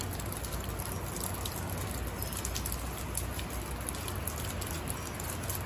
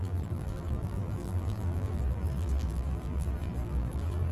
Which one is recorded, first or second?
first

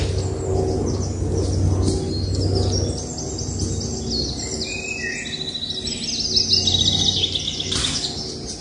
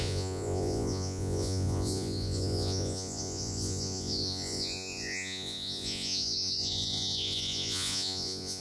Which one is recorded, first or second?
first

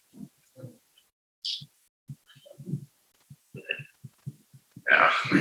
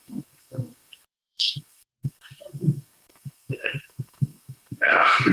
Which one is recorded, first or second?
first